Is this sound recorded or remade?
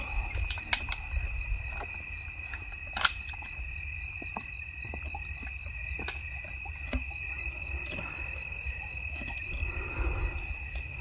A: recorded